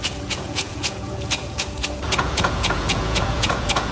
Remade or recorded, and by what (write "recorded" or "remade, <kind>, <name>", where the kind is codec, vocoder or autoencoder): remade, vocoder, Vocos